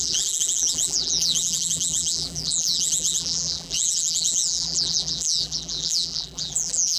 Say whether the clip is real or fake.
fake